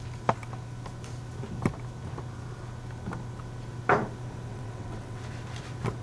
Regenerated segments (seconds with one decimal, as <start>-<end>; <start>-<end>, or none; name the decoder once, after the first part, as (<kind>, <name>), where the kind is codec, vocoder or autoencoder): 4.5-5.2 (vocoder, WaveNeXt)